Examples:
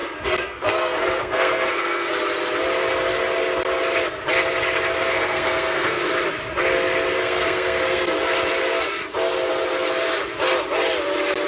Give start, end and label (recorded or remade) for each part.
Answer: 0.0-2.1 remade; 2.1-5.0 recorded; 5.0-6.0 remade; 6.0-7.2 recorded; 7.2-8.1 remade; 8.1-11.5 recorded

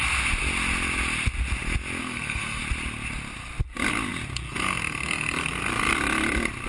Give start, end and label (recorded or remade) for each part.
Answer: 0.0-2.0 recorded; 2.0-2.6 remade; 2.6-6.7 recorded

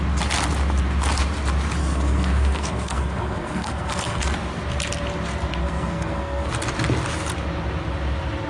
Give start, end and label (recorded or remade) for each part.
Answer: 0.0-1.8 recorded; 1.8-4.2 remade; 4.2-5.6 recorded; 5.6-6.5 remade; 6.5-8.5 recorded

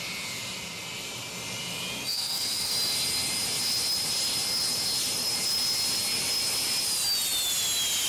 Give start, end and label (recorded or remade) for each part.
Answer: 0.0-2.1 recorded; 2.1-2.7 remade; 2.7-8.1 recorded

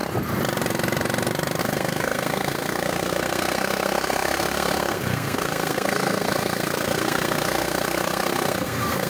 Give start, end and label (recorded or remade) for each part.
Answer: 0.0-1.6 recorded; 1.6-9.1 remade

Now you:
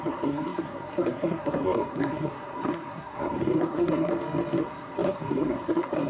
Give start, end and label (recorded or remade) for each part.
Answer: 0.0-4.1 remade; 4.1-4.6 recorded; 4.6-6.1 remade